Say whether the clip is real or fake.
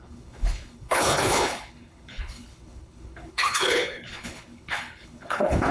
fake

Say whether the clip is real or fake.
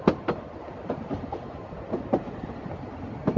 real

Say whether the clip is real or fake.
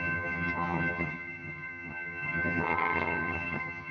fake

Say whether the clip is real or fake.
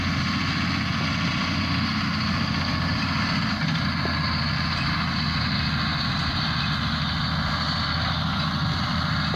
real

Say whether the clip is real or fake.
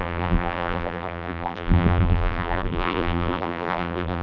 fake